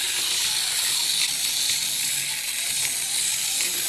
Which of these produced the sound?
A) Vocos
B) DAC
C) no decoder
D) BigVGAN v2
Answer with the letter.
C